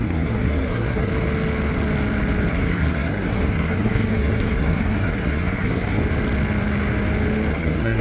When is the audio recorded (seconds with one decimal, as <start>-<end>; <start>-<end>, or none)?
1.1-2.5; 6.0-7.5